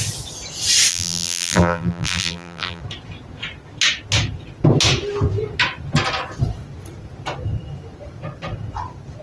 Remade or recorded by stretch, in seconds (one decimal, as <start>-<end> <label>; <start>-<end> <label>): 0.0-0.9 recorded; 0.9-2.8 remade; 2.8-9.2 recorded